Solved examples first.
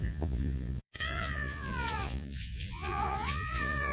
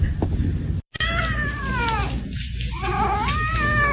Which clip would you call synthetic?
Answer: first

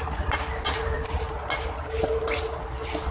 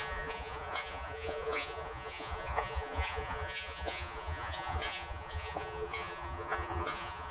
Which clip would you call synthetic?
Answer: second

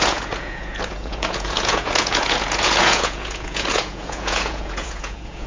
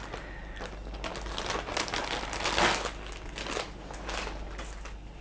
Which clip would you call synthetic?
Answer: first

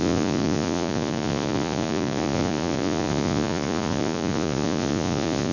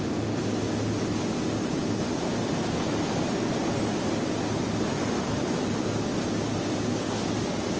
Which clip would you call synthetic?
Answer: first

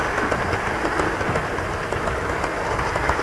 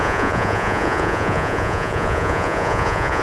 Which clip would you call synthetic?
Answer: second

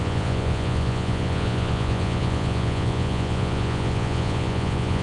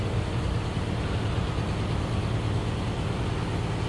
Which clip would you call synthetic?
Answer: first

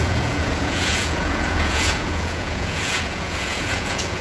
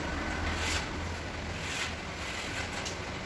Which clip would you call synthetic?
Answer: first